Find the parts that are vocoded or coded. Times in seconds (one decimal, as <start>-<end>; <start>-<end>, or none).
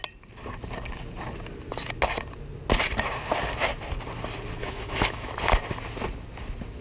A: 4.6-5.3